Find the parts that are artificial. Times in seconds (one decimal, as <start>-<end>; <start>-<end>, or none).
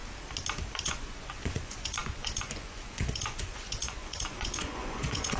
0.8-5.4